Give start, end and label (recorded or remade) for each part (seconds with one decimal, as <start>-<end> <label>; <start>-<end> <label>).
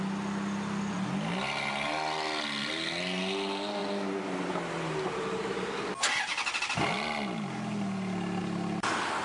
0.0-9.2 recorded